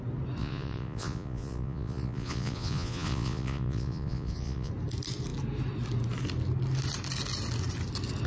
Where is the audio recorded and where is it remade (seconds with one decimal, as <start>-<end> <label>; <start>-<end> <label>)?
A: 0.0-0.4 recorded; 0.4-4.7 remade; 4.7-8.3 recorded